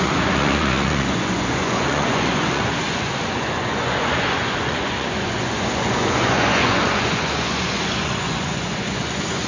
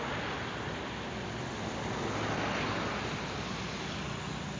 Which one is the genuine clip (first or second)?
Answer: second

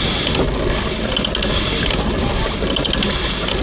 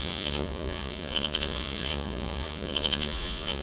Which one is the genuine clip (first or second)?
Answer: first